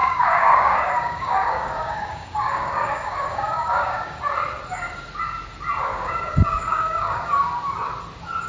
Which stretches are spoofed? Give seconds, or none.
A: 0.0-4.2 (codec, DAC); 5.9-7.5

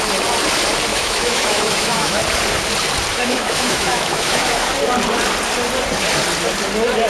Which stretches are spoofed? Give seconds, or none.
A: 0.9-2.2 (autoencoder, DAC-VAE); 3.1-4.7

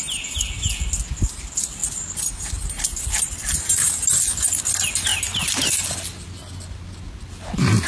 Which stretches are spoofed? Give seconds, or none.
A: none

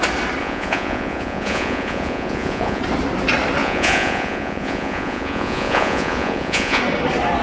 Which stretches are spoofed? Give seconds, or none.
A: 0.4-2.8 (vocoder, Vocos); 3.6-6.8

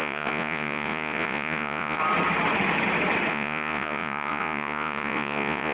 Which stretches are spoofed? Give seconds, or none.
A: 0.0-2.0 (vocoder, Vocos); 3.3-5.7

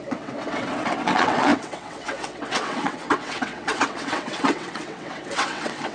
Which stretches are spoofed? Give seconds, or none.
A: 0.0-5.9 (vocoder, WaveNeXt)